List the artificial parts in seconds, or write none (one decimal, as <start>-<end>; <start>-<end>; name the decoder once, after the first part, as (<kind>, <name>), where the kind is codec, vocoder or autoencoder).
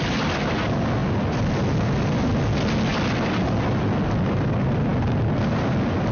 none